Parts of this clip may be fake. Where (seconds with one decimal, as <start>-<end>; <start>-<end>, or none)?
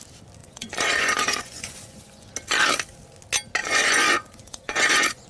0.4-2.3; 3.6-5.3